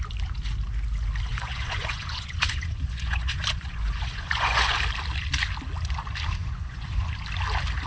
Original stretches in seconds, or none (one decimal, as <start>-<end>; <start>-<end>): 0.0-1.3; 4.8-6.4; 7.0-7.9